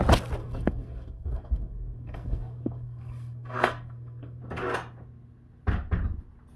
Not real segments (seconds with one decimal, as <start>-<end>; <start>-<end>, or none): 0.4-4.4

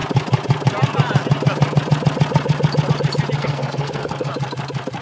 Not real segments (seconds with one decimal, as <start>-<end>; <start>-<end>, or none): 3.4-4.3

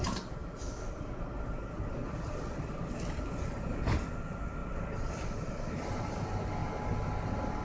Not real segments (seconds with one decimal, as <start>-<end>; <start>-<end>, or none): 0.4-0.9

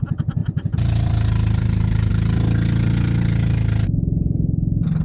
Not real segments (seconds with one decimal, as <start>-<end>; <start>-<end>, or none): 0.4-2.1

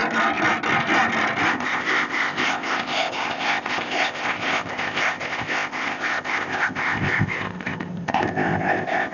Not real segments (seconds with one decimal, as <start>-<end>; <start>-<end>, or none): 1.5-9.1